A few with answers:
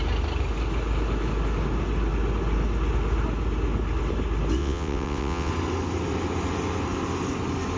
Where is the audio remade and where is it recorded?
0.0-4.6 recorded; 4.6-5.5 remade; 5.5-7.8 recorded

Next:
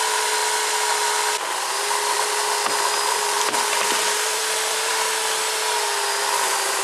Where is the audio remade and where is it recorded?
0.0-0.4 remade; 0.4-1.7 recorded; 1.7-4.9 remade; 4.9-6.2 recorded; 6.2-6.8 remade

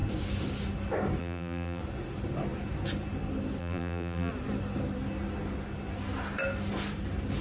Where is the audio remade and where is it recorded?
0.0-1.2 recorded; 1.2-1.8 remade; 1.8-3.6 recorded; 3.6-4.3 remade; 4.3-7.4 recorded